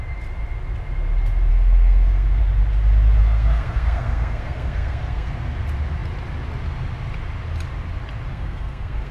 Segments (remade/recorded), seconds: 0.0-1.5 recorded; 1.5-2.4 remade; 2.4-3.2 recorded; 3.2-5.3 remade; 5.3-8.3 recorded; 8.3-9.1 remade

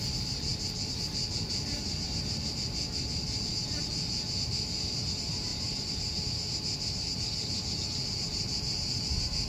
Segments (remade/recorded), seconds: 0.0-5.5 recorded; 5.5-6.2 remade; 6.2-9.5 recorded

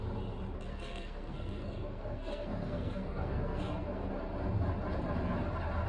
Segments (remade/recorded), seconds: 0.0-0.7 recorded; 0.7-4.1 remade; 4.1-5.9 recorded